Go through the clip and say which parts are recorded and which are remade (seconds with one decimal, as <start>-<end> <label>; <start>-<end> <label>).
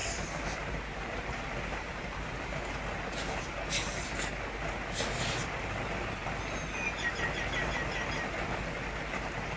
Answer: 0.0-2.6 remade; 2.6-9.6 recorded